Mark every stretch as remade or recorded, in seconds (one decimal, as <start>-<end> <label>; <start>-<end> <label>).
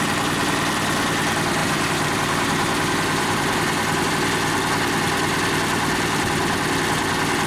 0.0-1.6 recorded; 1.6-4.1 remade; 4.1-7.5 recorded